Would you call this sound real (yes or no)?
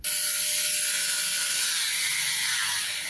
yes